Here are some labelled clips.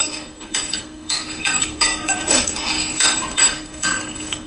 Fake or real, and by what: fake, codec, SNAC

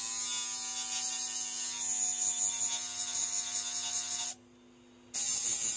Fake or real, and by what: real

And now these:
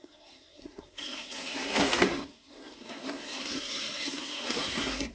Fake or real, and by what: fake, codec, SNAC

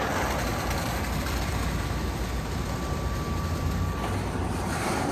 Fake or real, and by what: real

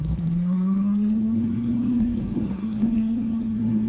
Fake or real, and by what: fake, codec, SNAC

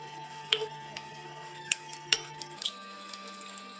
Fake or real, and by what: fake, codec, SNAC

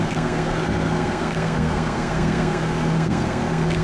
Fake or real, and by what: fake, codec, SNAC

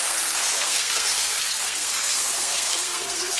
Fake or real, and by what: fake, codec, SNAC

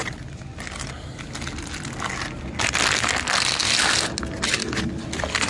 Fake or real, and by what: real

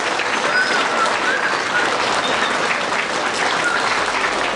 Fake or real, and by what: real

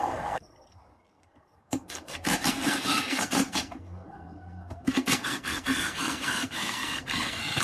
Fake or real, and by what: fake, codec, SNAC